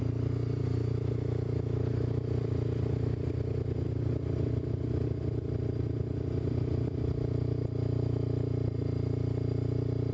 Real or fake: real